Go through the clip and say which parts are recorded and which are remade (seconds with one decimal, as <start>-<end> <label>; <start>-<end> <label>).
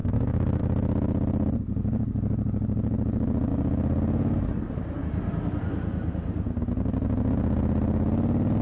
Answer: 0.0-0.6 remade; 0.6-8.6 recorded